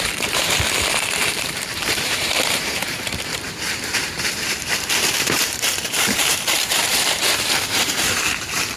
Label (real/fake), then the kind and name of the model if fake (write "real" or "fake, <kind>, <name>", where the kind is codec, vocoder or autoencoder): fake, vocoder, BigVGAN v2